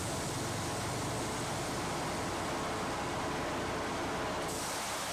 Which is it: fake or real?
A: real